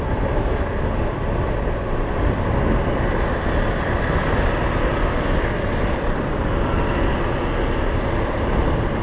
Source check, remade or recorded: recorded